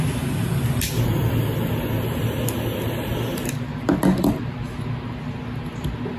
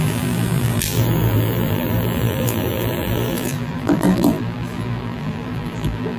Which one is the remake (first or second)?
second